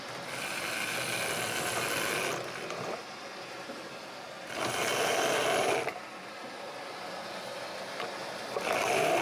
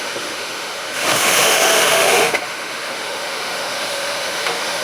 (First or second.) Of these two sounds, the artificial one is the second